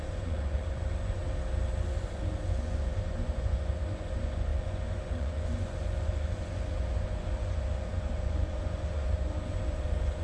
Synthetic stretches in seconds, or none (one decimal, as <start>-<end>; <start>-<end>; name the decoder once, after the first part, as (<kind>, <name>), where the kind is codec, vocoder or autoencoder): 0.0-1.2 (vocoder, Vocos); 1.8-10.2